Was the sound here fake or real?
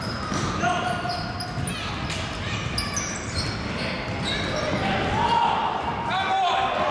real